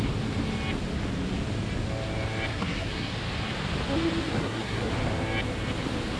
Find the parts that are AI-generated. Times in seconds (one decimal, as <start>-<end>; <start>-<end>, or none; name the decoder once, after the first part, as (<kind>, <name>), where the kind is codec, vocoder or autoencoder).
2.5-3.1 (codec, SNAC); 4.3-4.9